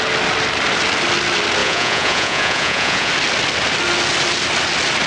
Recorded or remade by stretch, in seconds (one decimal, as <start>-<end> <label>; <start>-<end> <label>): 0.0-1.6 recorded; 1.6-3.1 remade; 3.1-5.1 recorded